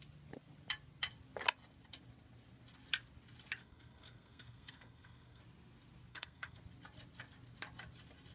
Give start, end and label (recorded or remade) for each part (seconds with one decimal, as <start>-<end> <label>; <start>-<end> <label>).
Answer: 0.0-3.6 recorded; 3.6-5.4 remade; 5.4-6.1 recorded; 6.1-6.6 remade; 6.6-8.3 recorded